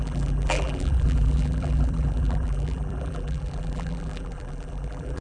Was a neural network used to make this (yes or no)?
yes